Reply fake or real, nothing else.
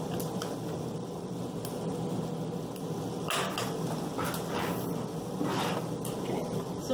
real